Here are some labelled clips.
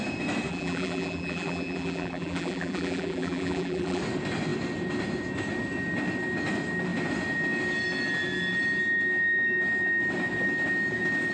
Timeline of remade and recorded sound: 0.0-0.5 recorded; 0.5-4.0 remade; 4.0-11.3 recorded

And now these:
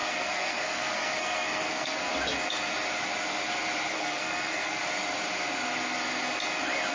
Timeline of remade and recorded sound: 0.0-2.1 remade; 2.1-3.9 recorded; 3.9-4.8 remade; 4.8-6.9 recorded

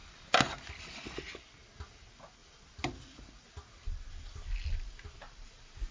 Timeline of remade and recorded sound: 0.0-5.9 recorded